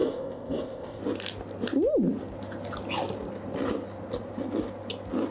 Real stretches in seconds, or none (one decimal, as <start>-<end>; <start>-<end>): 1.0-5.3